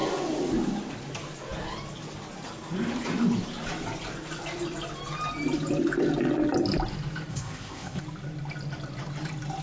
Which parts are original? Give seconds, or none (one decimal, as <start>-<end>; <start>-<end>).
0.0-7.3; 8.0-9.6

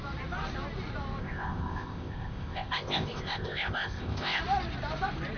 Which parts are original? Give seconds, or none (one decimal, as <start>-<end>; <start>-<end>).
0.0-1.2; 4.4-5.4